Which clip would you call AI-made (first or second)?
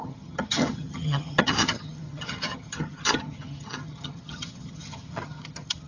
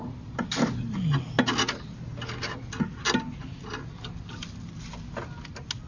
first